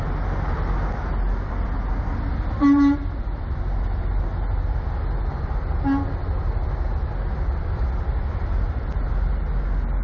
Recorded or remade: recorded